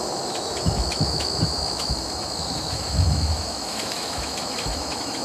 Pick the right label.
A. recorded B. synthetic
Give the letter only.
B